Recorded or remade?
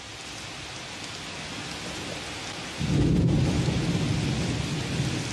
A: recorded